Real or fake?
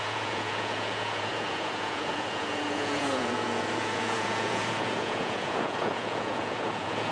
fake